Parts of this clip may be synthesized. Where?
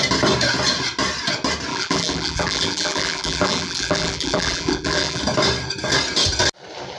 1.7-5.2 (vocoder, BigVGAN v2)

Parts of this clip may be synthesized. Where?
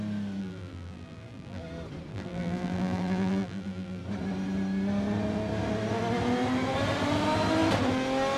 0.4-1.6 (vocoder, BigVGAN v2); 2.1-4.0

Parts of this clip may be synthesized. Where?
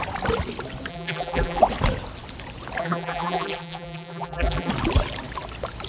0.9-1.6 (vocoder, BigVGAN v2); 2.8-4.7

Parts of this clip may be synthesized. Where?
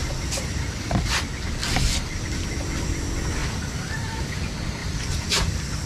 0.0-1.2 (vocoder, BigVGAN v2); 4.8-5.9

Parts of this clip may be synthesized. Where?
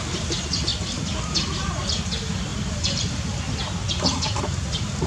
2.5-3.4 (vocoder, BigVGAN v2)